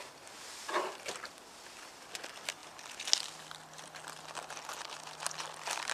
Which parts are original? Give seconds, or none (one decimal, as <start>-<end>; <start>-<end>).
2.6-5.4